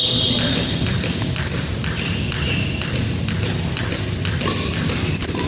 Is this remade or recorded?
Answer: recorded